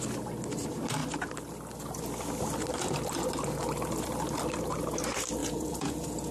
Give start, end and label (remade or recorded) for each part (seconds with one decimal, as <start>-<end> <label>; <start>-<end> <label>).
0.0-5.4 recorded; 5.4-6.3 remade